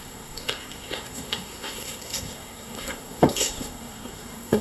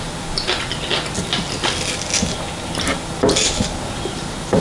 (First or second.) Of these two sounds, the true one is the second